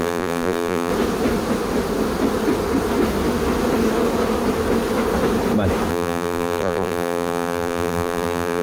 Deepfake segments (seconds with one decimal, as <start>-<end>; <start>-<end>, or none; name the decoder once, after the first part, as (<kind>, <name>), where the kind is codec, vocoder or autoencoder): 0.0-0.9 (vocoder, BigVGAN v2); 5.9-8.6